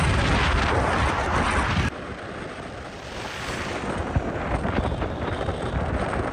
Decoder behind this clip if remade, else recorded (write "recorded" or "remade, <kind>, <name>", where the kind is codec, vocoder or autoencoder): recorded